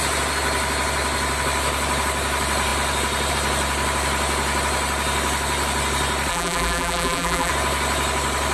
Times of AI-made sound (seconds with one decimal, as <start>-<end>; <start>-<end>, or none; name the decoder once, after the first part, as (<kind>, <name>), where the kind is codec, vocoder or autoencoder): 6.3-7.5 (vocoder, BigVGAN v2)